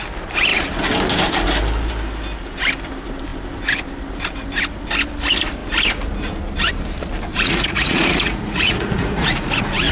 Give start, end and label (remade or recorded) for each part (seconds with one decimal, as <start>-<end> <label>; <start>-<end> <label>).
0.0-7.3 recorded; 7.3-9.9 remade